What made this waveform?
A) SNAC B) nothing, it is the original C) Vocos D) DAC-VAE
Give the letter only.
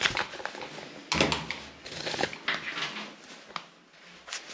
B